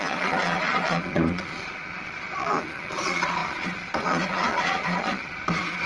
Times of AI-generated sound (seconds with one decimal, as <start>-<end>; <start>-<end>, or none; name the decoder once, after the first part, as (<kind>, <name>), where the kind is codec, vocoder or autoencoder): 0.0-5.9 (vocoder, Vocos)